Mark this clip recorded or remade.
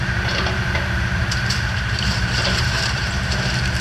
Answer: remade